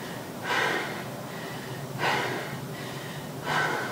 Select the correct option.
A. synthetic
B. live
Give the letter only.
A